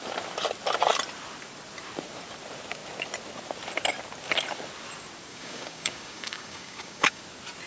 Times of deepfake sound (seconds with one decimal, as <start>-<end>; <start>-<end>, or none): 5.3-7.2